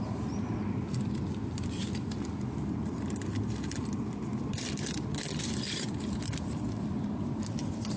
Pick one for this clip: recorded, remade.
remade